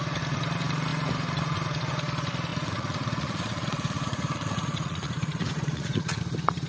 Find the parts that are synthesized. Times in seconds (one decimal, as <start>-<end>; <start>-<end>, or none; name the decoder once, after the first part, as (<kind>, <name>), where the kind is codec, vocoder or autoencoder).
2.5-6.2 (vocoder, Vocos)